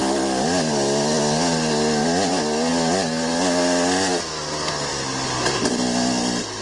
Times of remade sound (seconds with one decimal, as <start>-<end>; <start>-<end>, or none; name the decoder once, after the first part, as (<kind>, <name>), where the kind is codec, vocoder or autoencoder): none